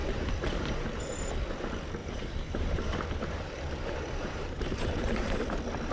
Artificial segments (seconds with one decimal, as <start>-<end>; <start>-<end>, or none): 0.0-1.0; 2.0-5.5